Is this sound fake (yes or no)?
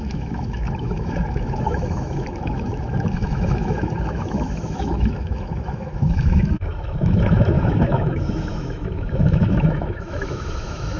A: yes